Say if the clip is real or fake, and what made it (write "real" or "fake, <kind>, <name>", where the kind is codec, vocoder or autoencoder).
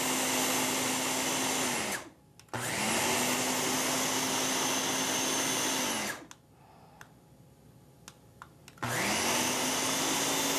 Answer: real